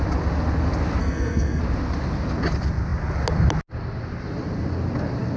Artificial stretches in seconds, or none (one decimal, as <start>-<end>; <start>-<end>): 1.0-1.6